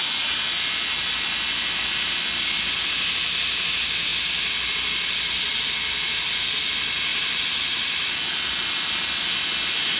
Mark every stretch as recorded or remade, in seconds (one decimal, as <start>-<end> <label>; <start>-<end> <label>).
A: 0.0-10.0 recorded